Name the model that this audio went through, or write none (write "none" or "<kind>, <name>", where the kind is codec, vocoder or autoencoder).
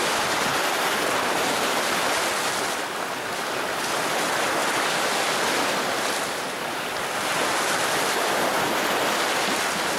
none